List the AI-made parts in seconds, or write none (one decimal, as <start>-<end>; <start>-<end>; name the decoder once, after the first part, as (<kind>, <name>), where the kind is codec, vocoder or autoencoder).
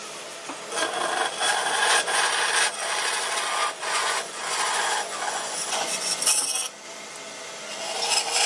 1.6-2.3 (vocoder, Vocos); 3.6-6.2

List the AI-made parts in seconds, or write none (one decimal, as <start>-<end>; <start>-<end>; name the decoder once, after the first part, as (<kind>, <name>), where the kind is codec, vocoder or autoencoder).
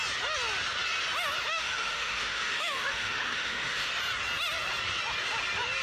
1.5-3.9 (autoencoder, DAC-VAE)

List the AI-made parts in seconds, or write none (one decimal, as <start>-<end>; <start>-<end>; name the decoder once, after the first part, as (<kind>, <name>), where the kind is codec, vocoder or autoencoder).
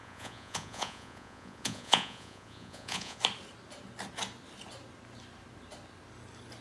0.0-3.2 (vocoder, Vocos)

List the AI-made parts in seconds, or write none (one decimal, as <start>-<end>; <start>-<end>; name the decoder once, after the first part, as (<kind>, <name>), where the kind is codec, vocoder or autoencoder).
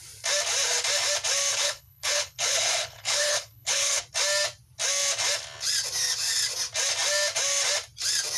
1.5-4.0 (codec, HILCodec)